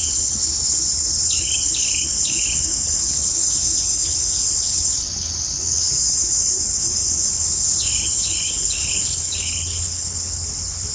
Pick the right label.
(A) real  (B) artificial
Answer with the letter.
B